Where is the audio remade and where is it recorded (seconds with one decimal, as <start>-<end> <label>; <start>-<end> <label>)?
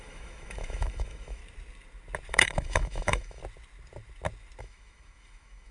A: 0.0-1.4 remade; 1.4-2.3 recorded; 2.3-3.4 remade; 3.4-4.6 recorded; 4.6-5.7 remade